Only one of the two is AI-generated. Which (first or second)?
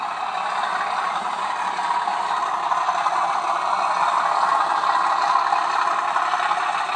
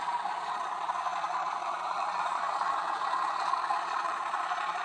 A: second